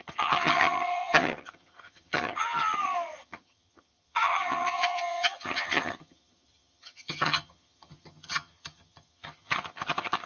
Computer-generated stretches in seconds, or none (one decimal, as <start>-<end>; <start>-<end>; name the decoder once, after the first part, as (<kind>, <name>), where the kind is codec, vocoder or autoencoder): 0.0-10.3 (vocoder, HiFi-GAN)